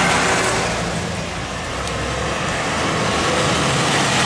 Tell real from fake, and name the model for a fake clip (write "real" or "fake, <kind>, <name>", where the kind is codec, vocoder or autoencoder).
real